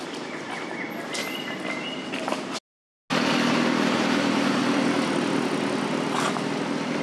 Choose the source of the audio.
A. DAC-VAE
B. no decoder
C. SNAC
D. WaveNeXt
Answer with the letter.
B